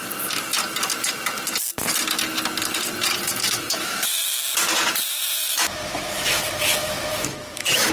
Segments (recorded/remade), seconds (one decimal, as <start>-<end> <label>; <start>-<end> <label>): 0.0-3.4 recorded; 3.4-4.4 remade; 4.4-5.4 recorded; 5.4-7.9 remade